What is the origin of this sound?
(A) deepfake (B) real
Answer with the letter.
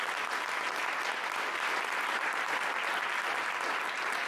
B